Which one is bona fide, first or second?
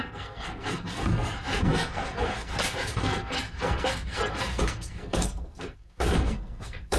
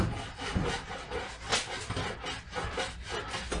second